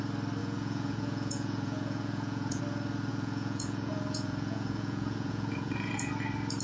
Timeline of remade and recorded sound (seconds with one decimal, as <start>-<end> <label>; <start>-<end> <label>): 0.0-0.4 recorded; 0.4-2.6 remade; 2.6-3.1 recorded; 3.1-6.1 remade; 6.1-6.6 recorded